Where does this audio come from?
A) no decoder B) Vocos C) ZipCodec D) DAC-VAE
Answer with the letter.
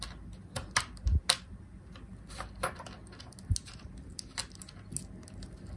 A